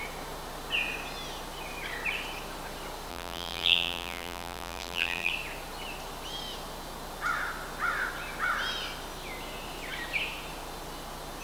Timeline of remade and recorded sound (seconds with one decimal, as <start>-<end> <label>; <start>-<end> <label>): 0.0-3.1 recorded; 3.1-5.3 remade; 5.3-11.4 recorded